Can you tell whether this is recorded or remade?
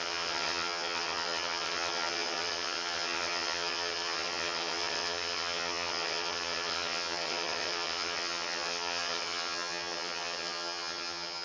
remade